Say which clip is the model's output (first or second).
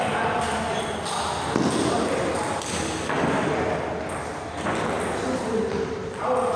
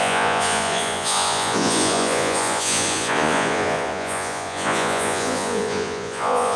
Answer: second